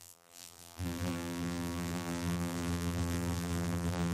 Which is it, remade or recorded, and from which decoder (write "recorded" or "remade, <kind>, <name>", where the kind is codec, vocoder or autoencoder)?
remade, vocoder, BigVGAN v2